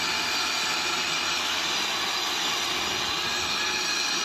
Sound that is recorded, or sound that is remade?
recorded